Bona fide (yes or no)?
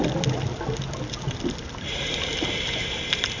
yes